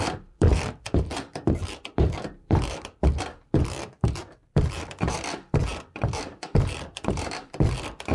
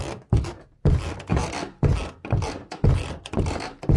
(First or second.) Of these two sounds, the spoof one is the first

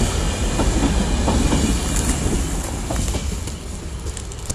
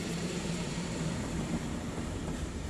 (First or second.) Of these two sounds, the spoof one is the second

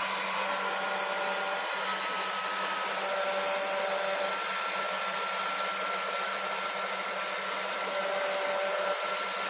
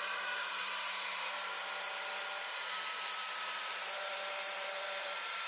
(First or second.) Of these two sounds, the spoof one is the second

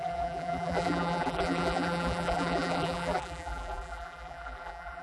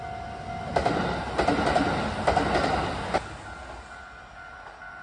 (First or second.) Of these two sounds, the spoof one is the first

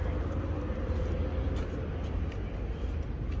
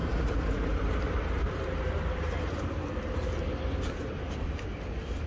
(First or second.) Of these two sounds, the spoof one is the second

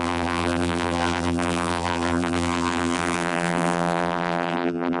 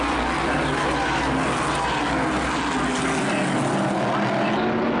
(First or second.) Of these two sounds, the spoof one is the first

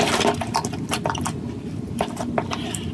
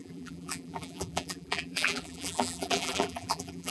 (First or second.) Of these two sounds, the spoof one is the second